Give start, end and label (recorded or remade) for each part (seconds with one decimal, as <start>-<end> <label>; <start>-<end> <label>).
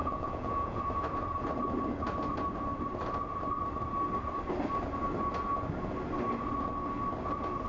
0.0-0.8 remade; 0.8-7.7 recorded